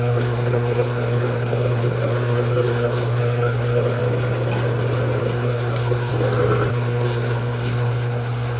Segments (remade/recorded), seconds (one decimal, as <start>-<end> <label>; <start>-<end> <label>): 0.0-4.0 remade; 4.0-5.2 recorded; 5.2-6.1 remade; 6.1-6.7 recorded; 6.7-8.6 remade